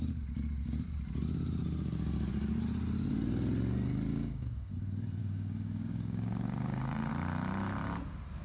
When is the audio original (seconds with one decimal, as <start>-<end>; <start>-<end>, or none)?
0.0-4.1; 4.7-5.2; 7.1-8.4